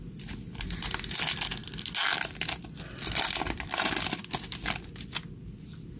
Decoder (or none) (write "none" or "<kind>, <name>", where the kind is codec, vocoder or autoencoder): none